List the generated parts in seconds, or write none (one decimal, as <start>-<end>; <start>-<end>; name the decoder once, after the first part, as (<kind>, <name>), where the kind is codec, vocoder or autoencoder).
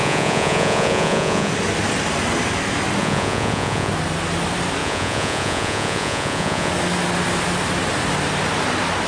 0.0-1.5 (vocoder, Vocos); 3.0-3.9; 4.8-6.7